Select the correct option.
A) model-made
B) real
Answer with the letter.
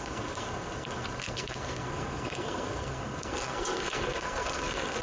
A